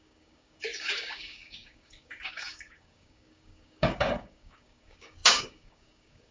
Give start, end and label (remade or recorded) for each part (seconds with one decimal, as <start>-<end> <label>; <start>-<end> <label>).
0.0-6.3 remade